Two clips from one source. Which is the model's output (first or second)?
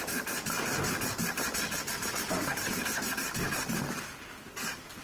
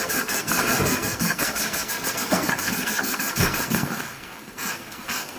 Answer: second